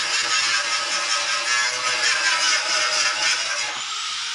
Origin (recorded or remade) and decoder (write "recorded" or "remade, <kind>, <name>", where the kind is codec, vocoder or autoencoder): recorded